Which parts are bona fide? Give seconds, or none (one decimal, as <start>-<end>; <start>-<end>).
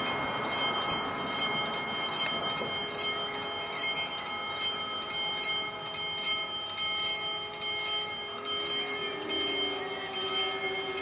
0.0-11.0